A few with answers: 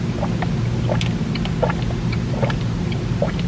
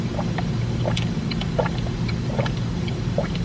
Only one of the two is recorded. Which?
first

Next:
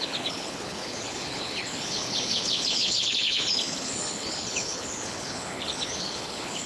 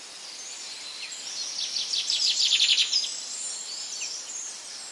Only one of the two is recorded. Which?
second